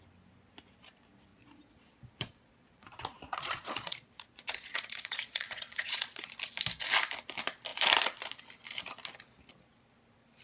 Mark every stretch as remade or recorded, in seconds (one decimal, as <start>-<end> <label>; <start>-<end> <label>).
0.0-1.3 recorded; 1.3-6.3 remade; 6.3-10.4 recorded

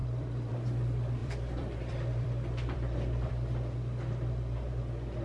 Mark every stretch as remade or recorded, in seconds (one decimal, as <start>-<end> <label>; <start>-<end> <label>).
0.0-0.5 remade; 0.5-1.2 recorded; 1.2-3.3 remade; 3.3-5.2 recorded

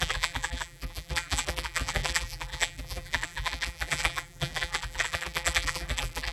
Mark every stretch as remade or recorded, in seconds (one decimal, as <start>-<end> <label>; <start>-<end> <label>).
0.0-6.3 remade

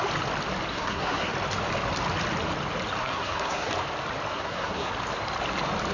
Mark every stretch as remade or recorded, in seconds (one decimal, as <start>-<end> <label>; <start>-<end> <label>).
0.0-0.7 recorded; 0.7-1.3 remade; 1.3-3.0 recorded; 3.0-3.7 remade; 3.7-4.3 recorded; 4.3-4.9 remade; 4.9-5.9 recorded